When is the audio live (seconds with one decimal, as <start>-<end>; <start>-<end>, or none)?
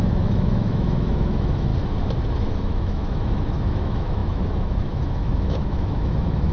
1.7-2.3